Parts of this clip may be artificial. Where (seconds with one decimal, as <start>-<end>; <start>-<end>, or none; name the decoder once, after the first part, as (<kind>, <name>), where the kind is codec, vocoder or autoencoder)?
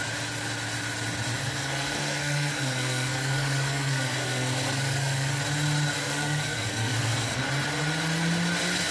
1.4-5.4 (codec, SNAC); 6.0-7.4